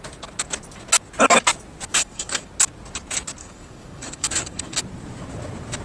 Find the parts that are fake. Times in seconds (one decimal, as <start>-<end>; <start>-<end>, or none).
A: 1.9-2.5; 3.4-4.8